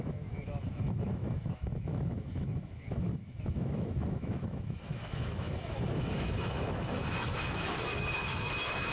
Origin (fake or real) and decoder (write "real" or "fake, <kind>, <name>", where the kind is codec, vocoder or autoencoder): fake, autoencoder, DAC-VAE